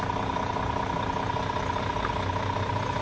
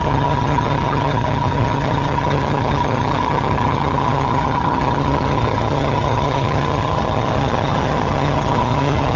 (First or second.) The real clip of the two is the first